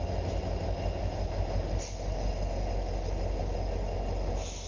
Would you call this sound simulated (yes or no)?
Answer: no